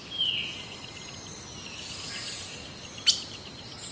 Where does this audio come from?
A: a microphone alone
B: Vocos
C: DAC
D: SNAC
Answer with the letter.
A